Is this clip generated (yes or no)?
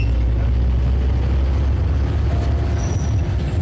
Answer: no